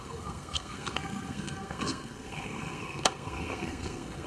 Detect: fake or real fake